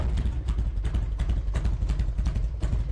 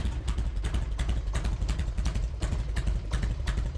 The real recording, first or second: first